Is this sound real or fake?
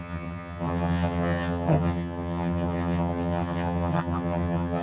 fake